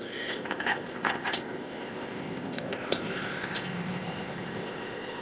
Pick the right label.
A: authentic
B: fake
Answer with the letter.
B